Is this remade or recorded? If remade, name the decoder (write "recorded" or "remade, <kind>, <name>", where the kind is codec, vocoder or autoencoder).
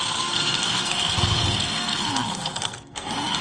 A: remade, codec, SNAC